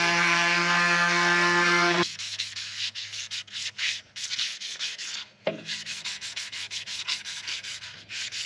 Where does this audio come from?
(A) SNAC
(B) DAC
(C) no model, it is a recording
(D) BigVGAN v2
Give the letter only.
A